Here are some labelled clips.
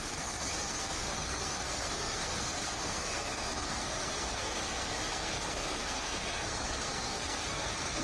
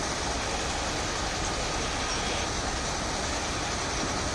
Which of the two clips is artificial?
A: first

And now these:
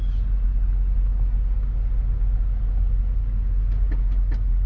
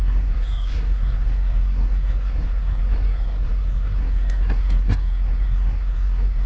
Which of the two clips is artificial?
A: second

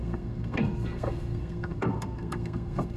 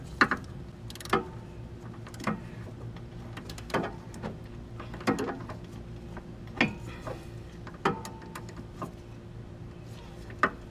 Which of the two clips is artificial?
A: first